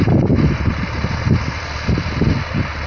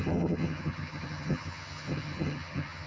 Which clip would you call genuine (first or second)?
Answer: first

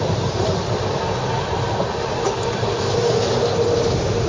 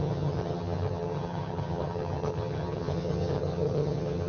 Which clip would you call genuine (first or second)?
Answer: first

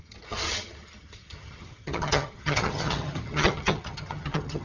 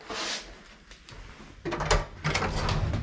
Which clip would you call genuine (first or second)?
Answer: second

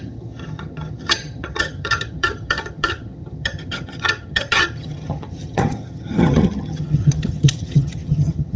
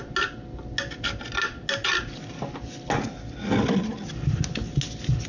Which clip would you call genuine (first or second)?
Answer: second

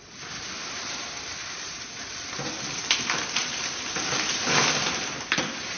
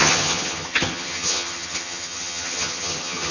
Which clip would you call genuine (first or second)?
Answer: first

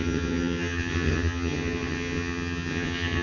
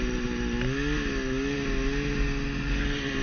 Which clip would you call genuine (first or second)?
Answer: second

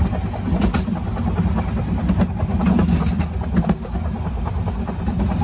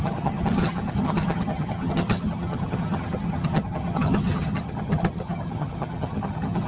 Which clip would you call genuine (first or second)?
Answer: first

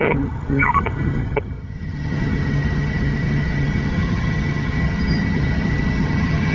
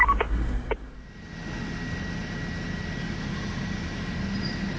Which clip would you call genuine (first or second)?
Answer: second